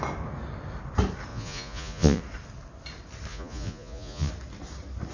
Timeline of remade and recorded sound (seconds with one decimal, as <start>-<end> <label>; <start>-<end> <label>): 0.0-1.3 recorded; 1.3-2.2 remade; 2.2-3.3 recorded; 3.3-4.3 remade; 4.3-5.1 recorded